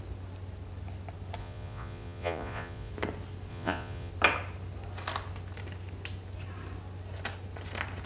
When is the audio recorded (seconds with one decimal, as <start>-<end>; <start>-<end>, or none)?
0.0-1.4; 2.9-3.5; 4.1-8.1